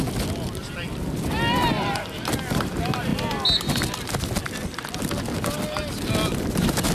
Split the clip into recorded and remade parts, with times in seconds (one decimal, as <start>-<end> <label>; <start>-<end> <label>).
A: 0.0-6.9 recorded